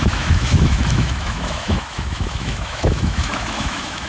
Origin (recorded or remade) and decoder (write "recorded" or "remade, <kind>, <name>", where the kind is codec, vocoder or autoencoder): remade, autoencoder, DAC-VAE